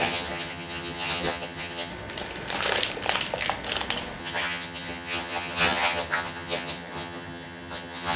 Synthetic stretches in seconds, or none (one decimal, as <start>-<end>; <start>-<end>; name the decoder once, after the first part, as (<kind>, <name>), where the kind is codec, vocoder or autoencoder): 0.0-1.9 (vocoder, HiFi-GAN); 4.2-8.2